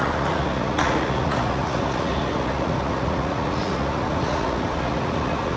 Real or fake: fake